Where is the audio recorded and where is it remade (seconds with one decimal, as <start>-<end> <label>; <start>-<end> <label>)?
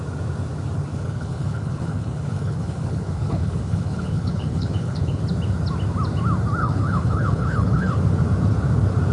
0.0-0.9 recorded; 0.9-5.2 remade; 5.2-6.6 recorded; 6.6-8.0 remade; 8.0-9.1 recorded